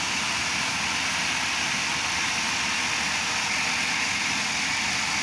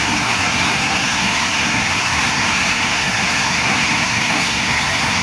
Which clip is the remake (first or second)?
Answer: second